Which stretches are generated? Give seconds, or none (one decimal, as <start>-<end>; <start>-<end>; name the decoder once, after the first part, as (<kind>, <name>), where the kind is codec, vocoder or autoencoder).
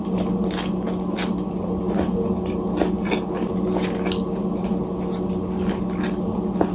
none